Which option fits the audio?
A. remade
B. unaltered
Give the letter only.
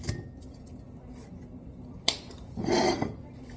B